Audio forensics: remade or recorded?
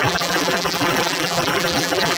remade